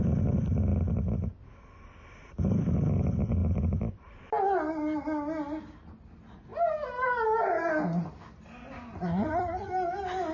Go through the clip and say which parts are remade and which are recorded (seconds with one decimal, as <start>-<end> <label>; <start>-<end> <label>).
0.0-9.1 recorded; 9.1-9.7 remade; 9.7-10.3 recorded